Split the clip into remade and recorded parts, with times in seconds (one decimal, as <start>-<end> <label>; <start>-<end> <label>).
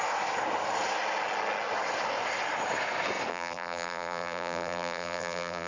0.0-3.3 recorded; 3.3-5.7 remade